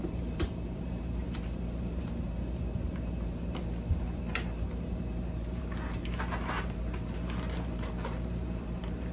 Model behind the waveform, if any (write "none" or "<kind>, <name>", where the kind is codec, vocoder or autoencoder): vocoder, BigVGAN v2